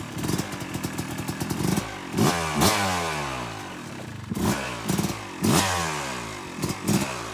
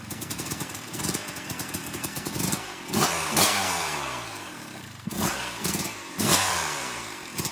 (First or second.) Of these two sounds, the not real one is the second